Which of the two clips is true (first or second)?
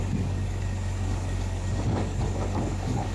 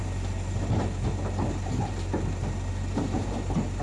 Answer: second